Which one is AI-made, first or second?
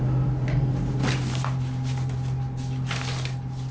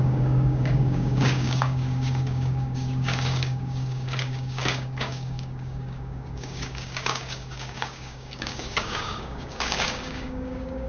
second